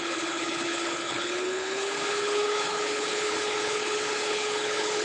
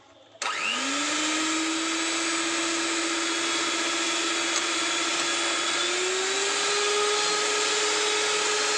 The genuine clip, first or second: second